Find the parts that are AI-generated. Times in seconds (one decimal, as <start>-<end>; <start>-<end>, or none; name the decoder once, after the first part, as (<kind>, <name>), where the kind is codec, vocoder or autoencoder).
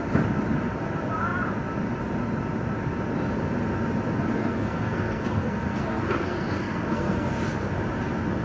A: 4.4-7.7 (codec, SNAC)